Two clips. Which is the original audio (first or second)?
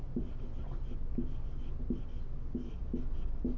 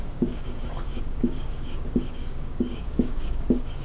first